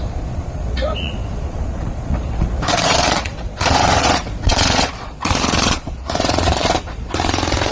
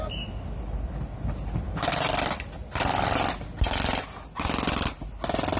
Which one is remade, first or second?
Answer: first